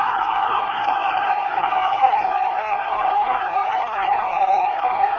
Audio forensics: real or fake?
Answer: fake